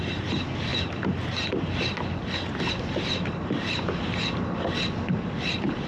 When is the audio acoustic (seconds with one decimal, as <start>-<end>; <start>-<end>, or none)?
0.0-5.9